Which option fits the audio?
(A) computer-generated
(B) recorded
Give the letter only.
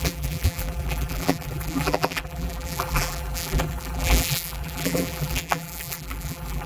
A